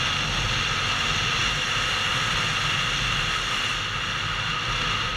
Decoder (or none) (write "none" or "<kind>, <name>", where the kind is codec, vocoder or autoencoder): none